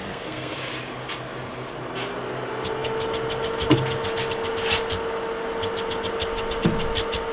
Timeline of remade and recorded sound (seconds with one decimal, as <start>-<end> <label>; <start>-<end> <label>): 0.0-0.6 remade; 0.6-7.3 recorded